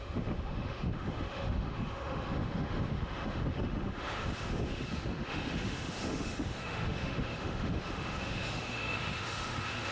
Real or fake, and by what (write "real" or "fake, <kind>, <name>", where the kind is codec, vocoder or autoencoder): fake, autoencoder, DAC-VAE